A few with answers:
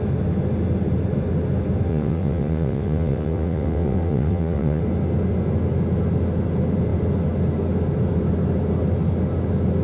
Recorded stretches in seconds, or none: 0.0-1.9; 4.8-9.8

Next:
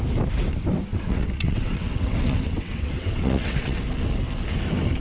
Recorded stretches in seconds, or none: 0.0-0.9; 3.8-5.0

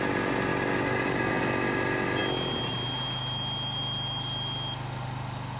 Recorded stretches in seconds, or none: 0.0-5.6

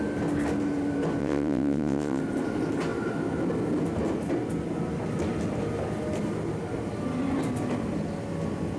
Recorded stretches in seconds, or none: 0.0-1.2; 2.2-8.8